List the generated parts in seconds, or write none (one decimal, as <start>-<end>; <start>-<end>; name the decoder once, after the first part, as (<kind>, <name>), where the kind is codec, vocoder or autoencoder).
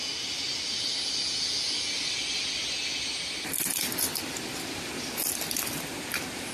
none